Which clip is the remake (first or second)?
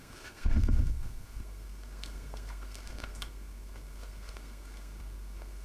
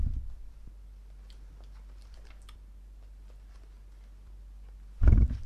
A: first